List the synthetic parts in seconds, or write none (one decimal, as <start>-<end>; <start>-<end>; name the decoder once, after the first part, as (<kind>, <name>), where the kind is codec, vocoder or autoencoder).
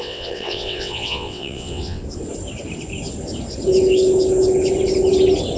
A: 0.0-2.0 (vocoder, WaveNeXt)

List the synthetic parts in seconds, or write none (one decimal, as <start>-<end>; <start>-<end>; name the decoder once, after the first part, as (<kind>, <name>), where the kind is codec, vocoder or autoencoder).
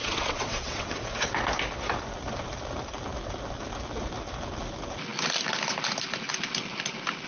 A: 0.0-1.1 (vocoder, WaveNeXt)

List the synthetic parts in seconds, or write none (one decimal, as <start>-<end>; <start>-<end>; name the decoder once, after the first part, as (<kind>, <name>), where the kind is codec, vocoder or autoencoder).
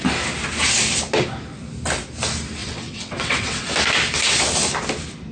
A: 2.6-3.7 (vocoder, WaveNeXt)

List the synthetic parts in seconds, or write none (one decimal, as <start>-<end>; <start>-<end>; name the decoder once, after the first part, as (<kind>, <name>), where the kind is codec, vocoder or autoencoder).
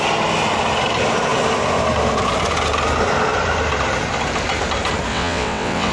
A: 5.1-5.9 (vocoder, WaveNeXt)